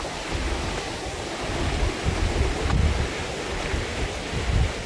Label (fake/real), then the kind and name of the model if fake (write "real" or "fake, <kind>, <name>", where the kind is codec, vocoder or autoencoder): real